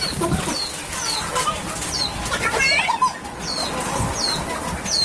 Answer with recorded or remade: recorded